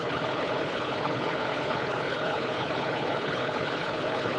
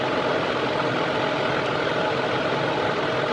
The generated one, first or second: first